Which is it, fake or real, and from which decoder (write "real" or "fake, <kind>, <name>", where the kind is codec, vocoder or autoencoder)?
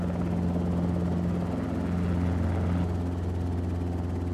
real